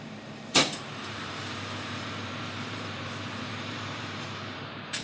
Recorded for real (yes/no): no